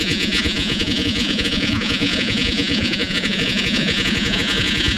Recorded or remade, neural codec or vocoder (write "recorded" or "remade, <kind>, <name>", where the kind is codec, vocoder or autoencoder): remade, vocoder, Vocos